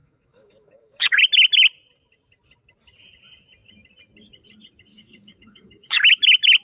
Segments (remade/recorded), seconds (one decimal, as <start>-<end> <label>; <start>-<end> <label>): 0.0-1.2 remade; 1.2-4.9 recorded; 4.9-6.0 remade; 6.0-6.6 recorded